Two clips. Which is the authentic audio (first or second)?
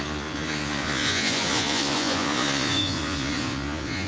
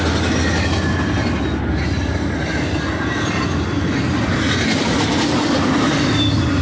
second